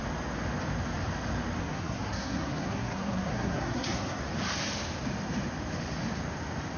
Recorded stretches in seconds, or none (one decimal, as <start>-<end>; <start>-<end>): 0.0-1.6; 4.2-6.8